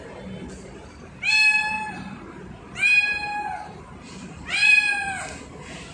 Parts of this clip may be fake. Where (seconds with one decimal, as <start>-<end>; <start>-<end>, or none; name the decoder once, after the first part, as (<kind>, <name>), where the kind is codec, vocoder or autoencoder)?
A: 1.6-5.1 (vocoder, BigVGAN v2)